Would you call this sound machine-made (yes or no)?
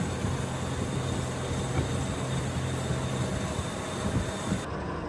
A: no